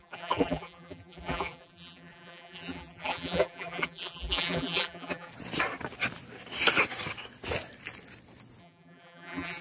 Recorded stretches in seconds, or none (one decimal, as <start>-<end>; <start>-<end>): 5.3-8.6